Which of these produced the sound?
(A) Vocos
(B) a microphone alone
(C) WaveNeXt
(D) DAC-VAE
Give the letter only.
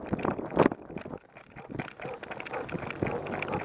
B